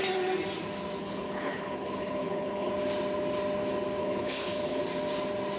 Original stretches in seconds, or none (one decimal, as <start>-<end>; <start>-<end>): 0.0-1.0; 2.7-4.0; 4.8-5.6